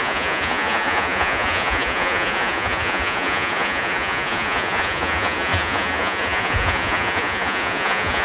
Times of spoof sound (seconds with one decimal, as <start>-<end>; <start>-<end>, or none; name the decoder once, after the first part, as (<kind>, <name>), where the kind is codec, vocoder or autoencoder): 0.0-8.2 (vocoder, Vocos)